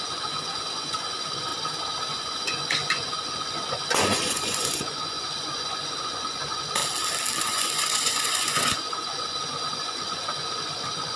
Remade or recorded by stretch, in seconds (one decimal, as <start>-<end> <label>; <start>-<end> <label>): 0.0-1.5 remade; 1.5-2.1 recorded; 2.1-6.8 remade; 6.8-7.4 recorded; 7.4-11.2 remade